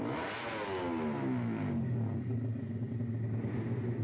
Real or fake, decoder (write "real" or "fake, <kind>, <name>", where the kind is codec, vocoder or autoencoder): real